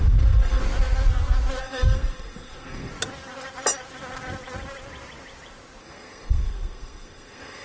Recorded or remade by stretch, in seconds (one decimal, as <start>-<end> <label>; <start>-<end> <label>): 0.0-0.6 remade; 0.6-1.6 recorded; 1.6-2.9 remade; 2.9-5.8 recorded; 5.8-7.6 remade